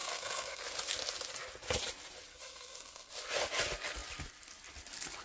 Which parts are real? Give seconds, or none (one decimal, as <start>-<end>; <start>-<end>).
0.6-2.3; 3.1-5.2